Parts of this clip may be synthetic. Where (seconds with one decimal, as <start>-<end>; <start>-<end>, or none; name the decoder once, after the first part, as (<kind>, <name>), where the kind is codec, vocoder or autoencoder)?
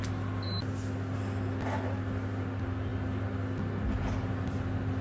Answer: none